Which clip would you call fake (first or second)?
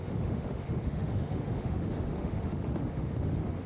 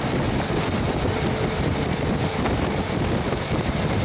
first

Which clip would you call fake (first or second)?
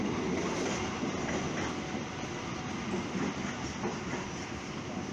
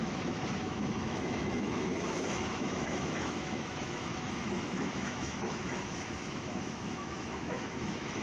second